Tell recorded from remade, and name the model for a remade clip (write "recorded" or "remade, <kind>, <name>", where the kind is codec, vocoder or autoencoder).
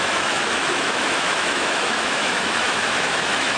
remade, autoencoder, DAC-VAE